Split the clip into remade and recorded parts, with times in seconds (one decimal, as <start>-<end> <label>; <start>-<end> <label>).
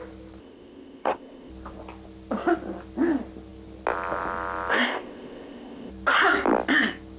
0.0-0.4 recorded; 0.4-1.5 remade; 1.5-4.7 recorded; 4.7-5.9 remade; 5.9-7.2 recorded